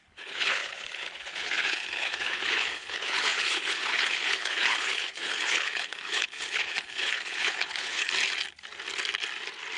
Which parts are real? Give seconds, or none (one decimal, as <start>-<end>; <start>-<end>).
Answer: 8.0-9.8

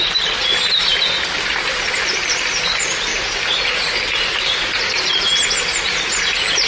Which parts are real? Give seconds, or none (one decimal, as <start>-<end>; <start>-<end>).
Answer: 0.0-6.7

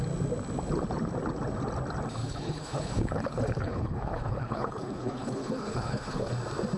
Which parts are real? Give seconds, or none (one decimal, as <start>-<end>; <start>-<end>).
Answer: 0.0-2.2; 6.3-6.8

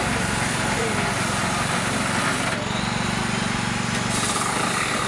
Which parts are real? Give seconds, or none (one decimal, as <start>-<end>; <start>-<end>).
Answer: 0.0-5.1

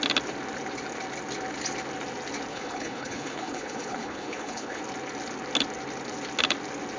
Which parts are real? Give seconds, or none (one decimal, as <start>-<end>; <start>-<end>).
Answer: 0.0-2.5; 4.8-7.0

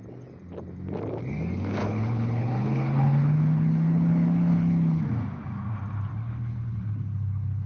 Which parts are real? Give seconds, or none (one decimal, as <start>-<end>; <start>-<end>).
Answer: 0.0-1.8; 5.0-6.1

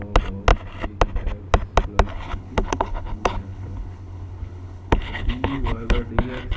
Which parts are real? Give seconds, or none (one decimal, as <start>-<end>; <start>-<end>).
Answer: 0.0-2.1; 6.1-6.6